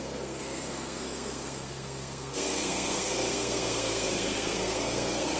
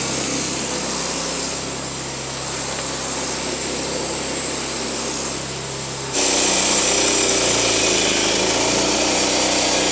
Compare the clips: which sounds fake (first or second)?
first